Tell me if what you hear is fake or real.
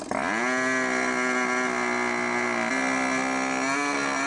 real